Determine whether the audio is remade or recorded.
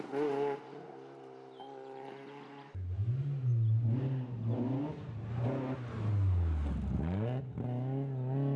recorded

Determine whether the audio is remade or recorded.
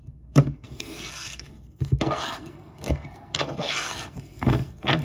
remade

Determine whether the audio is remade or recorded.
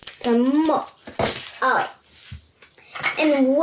recorded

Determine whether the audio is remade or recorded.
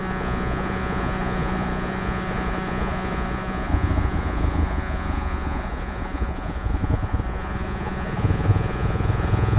remade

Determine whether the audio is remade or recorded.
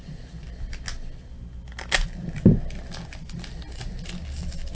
recorded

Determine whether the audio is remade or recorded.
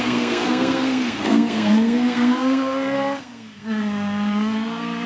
remade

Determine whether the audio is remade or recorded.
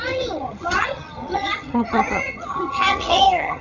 remade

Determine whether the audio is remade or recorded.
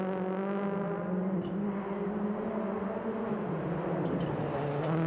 recorded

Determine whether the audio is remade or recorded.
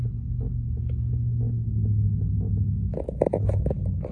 recorded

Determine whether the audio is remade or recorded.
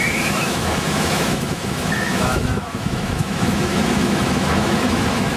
remade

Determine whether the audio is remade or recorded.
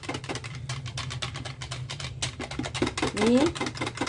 recorded